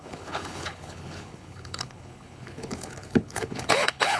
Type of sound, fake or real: fake